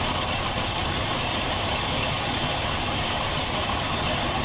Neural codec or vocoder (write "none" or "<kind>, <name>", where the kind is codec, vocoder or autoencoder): vocoder, BigVGAN v2